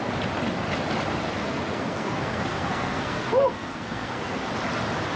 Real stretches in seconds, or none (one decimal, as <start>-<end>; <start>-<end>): 0.0-1.4; 4.5-5.2